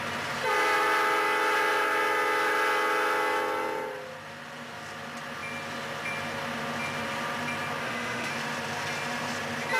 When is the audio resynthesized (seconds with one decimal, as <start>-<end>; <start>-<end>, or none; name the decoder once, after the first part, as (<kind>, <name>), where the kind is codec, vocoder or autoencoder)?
7.8-8.3 (autoencoder, DAC-VAE)